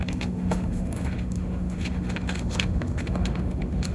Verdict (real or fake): fake